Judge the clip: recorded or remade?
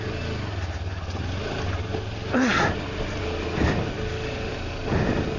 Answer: recorded